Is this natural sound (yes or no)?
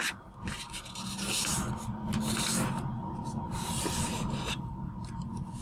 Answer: yes